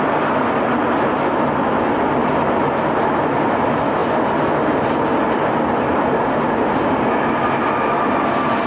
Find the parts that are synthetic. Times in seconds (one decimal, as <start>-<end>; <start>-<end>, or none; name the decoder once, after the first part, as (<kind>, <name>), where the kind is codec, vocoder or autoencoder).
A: none